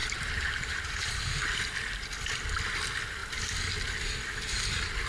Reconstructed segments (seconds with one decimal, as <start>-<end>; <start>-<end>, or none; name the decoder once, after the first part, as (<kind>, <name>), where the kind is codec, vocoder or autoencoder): 0.0-1.2 (vocoder, BigVGAN v2)